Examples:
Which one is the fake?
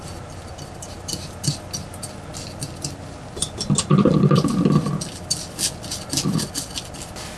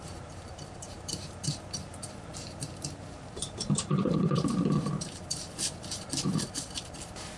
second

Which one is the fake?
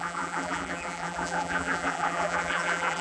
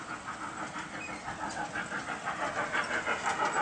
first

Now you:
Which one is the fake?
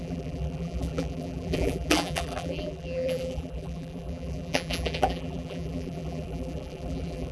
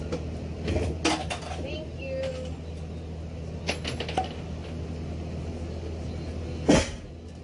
first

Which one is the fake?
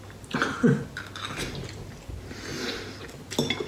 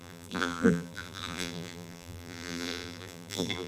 second